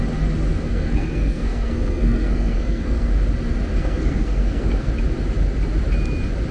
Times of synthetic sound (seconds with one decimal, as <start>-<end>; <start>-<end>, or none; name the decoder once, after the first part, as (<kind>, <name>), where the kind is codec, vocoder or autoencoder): 0.5-3.2 (codec, SNAC); 3.7-4.9